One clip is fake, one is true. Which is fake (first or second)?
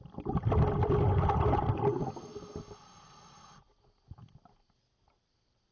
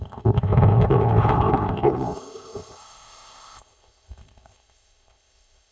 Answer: second